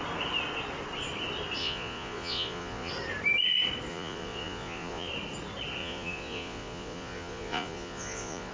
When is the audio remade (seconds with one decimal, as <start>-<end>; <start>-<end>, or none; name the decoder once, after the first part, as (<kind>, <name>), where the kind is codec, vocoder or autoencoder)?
1.6-2.9 (vocoder, Vocos); 3.9-5.1; 5.8-8.5